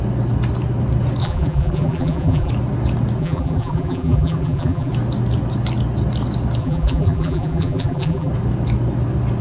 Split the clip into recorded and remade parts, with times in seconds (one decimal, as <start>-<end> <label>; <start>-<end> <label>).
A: 0.0-1.2 recorded; 1.2-2.5 remade; 2.5-3.2 recorded; 3.2-4.9 remade; 4.9-6.6 recorded; 6.6-8.3 remade; 8.3-9.4 recorded

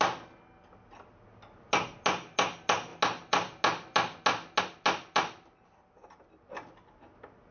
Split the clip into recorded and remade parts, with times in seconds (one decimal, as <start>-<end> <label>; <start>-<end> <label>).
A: 0.0-7.5 recorded

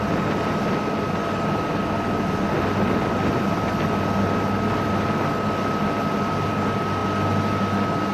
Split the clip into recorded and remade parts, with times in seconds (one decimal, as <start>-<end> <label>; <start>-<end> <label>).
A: 0.0-8.1 recorded

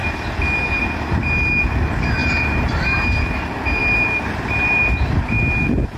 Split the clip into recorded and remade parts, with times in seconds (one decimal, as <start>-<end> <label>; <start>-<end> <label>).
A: 0.0-2.2 recorded; 2.2-2.8 remade; 2.8-3.8 recorded; 3.8-5.2 remade; 5.2-6.0 recorded

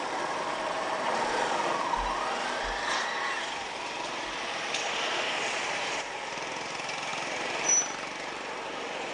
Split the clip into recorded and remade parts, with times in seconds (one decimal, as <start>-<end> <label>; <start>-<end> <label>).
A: 0.0-7.1 recorded; 7.1-9.1 remade

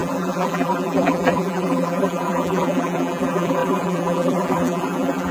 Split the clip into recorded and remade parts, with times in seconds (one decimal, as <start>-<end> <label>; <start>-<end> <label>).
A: 0.0-5.3 remade